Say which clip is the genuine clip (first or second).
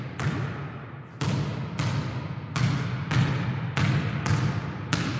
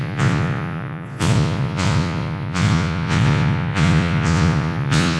first